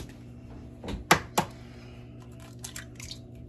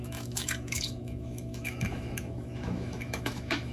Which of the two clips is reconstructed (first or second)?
second